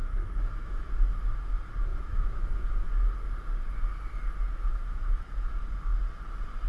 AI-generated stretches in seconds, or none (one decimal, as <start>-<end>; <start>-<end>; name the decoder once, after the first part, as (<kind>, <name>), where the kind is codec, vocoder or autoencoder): 0.0-0.9 (autoencoder, DAC-VAE); 1.9-2.7; 4.7-5.5